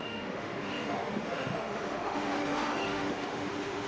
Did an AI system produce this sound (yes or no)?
yes